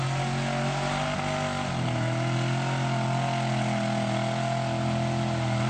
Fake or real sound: real